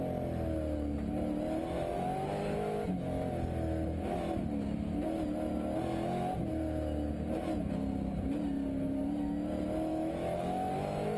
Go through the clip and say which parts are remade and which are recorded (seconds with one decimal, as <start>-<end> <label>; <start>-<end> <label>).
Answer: 0.0-9.9 recorded; 9.9-10.7 remade; 10.7-11.2 recorded